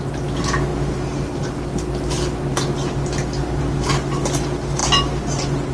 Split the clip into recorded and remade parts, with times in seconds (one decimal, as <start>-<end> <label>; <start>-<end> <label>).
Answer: 0.0-0.7 recorded; 0.7-1.5 remade; 1.5-2.5 recorded; 2.5-3.6 remade; 3.6-5.7 recorded